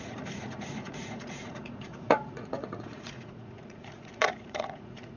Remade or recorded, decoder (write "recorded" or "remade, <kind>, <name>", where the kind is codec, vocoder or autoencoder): remade, vocoder, Vocos